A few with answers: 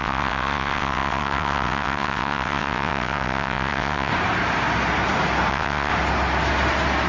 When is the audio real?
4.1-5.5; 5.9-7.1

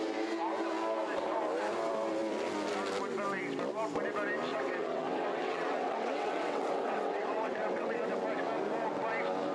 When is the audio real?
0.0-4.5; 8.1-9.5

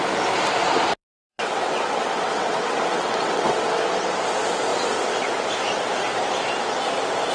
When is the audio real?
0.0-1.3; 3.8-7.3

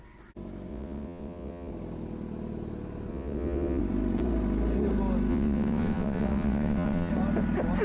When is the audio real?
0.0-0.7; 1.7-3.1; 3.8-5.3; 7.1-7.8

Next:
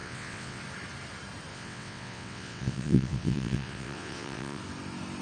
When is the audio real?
0.6-1.5; 4.6-5.2

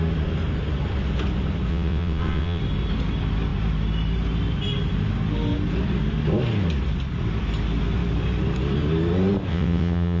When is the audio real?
0.0-1.7; 2.6-9.5

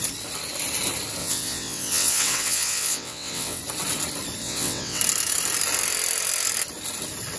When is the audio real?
0.0-1.2; 3.6-4.4; 5.0-7.4